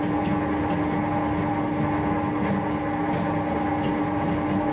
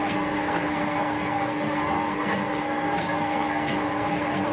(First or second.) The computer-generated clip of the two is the second